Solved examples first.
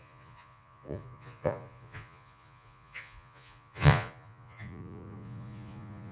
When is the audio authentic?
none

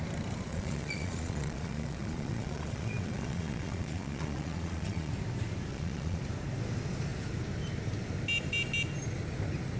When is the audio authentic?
0.0-0.5; 5.1-5.7; 6.2-9.8

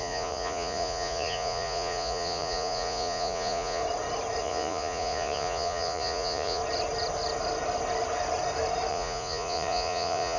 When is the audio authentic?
3.8-4.4; 6.6-8.9

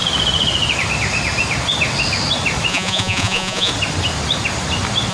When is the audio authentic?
0.0-2.7; 3.7-5.1

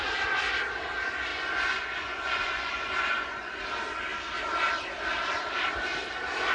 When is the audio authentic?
0.0-1.3; 3.6-6.5

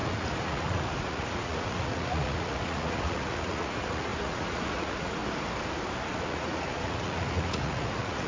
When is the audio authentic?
5.2-6.0

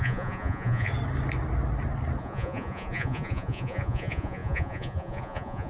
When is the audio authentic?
0.9-2.2